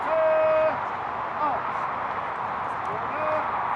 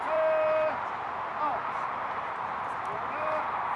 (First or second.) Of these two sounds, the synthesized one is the second